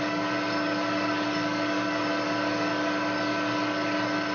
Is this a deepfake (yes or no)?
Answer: yes